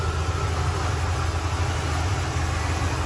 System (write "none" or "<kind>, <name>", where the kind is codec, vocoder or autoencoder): none